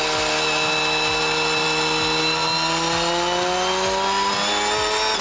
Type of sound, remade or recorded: recorded